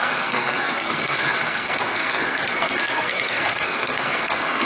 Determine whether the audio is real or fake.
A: fake